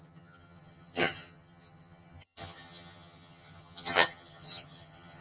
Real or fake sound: fake